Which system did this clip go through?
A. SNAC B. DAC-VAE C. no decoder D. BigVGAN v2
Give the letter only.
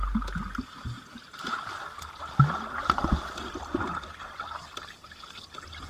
C